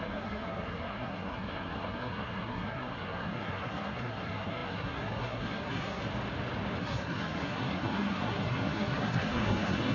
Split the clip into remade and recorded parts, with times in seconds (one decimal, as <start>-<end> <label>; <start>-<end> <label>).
0.0-6.0 remade; 6.0-6.8 recorded; 6.8-9.9 remade